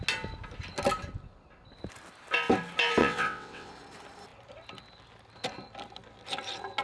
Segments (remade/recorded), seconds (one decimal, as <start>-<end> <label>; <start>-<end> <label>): 0.0-3.0 recorded; 3.0-3.7 remade; 3.7-6.8 recorded